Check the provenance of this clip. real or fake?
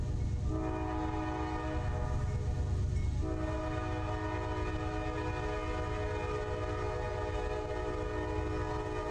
real